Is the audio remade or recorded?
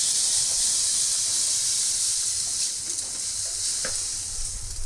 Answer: recorded